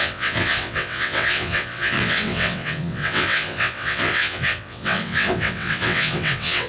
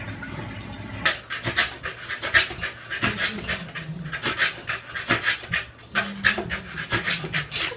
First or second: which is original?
second